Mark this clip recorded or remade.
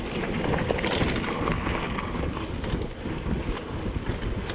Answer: remade